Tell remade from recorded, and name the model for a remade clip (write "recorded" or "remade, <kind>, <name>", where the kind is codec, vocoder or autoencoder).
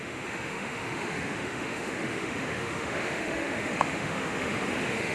remade, autoencoder, DAC-VAE